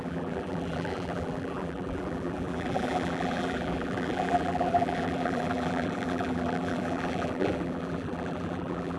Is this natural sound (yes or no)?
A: no